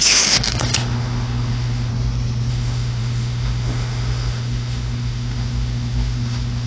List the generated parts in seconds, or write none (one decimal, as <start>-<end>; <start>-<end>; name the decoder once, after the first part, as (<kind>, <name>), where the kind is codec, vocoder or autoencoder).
0.0-1.9 (autoencoder, DAC-VAE); 2.5-6.7